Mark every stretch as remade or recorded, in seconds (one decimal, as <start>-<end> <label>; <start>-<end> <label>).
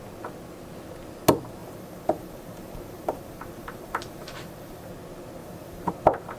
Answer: 0.0-1.6 recorded; 1.6-4.9 remade; 4.9-5.4 recorded; 5.4-5.9 remade; 5.9-6.4 recorded